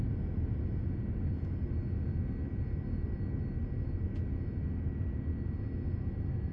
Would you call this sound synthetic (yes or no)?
no